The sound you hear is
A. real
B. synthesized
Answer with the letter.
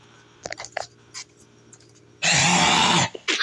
A